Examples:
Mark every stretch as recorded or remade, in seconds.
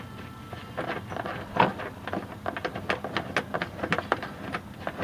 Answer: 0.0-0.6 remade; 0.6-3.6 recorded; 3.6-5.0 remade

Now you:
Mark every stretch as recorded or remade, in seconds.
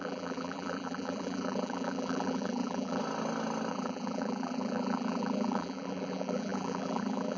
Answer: 0.0-3.0 remade; 3.0-3.7 recorded; 3.7-7.4 remade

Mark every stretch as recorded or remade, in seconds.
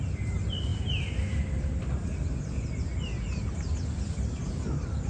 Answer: 0.0-5.1 recorded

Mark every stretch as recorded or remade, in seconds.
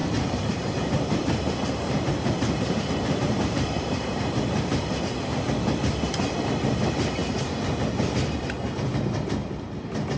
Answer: 0.0-5.0 remade; 5.0-10.2 recorded